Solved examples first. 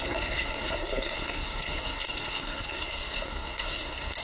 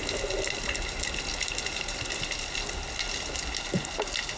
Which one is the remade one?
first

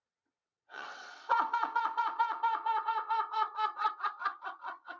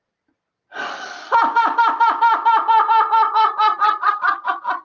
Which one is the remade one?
first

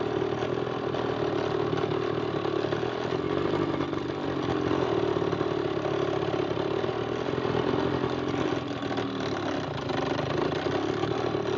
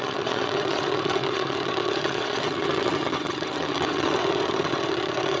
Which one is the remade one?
second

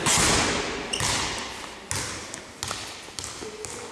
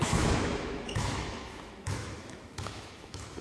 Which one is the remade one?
second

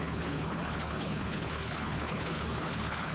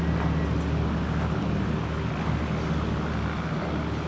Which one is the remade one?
first